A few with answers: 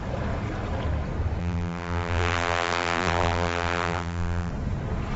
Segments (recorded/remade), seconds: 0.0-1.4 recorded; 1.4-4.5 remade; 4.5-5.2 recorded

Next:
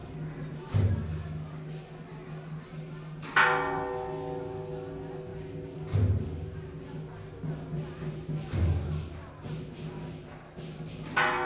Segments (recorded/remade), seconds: 0.0-0.9 remade; 0.9-11.5 recorded

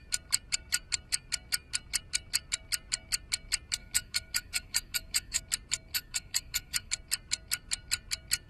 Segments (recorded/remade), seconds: 0.0-3.8 recorded; 3.8-5.4 remade; 5.4-5.9 recorded; 5.9-6.9 remade; 6.9-8.5 recorded